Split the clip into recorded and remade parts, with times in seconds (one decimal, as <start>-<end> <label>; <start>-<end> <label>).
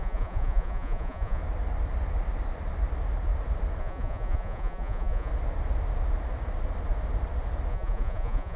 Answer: 0.0-1.4 remade; 1.4-3.8 recorded; 3.8-5.3 remade; 5.3-7.7 recorded; 7.7-8.6 remade